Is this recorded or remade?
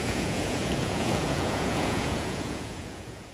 remade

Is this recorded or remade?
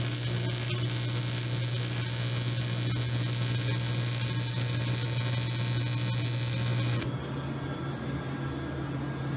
recorded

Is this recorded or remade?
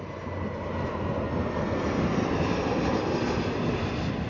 recorded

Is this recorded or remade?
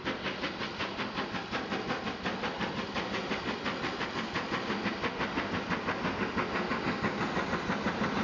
recorded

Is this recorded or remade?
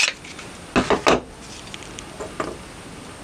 recorded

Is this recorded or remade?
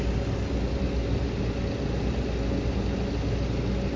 recorded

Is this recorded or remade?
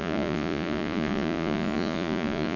remade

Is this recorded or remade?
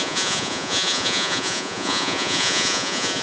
remade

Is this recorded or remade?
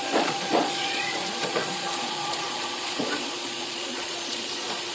remade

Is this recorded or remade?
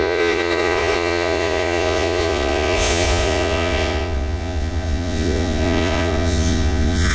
remade